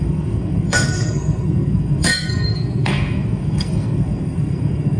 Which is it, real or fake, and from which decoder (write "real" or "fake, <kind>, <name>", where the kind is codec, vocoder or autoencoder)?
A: fake, codec, SNAC